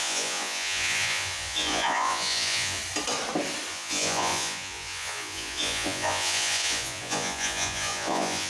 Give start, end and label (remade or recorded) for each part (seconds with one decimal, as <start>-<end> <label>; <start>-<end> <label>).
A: 0.0-2.8 remade; 2.8-3.7 recorded; 3.7-8.5 remade